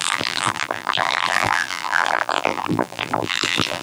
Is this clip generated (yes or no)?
yes